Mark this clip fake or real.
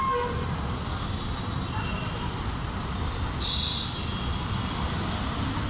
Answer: real